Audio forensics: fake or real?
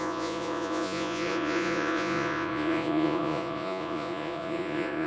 fake